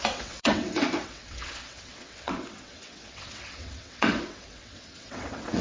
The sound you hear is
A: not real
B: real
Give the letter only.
A